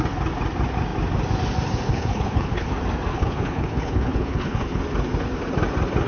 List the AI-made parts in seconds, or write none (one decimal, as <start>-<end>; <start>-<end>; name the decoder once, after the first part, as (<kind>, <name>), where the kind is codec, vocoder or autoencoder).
1.9-2.7 (codec, HILCodec); 3.1-4.8